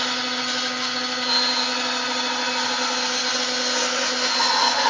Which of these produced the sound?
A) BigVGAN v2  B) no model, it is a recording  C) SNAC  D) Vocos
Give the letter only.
B